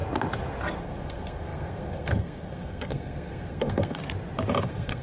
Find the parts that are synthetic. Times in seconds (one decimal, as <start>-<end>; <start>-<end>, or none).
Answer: 0.8-4.0; 4.6-5.0

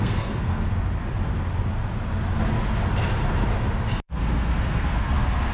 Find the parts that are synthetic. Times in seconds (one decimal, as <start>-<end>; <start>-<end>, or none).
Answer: 0.0-0.7; 4.0-5.5